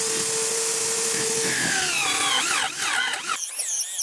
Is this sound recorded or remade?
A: recorded